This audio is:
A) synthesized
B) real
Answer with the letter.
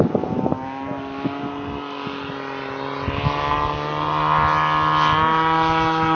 B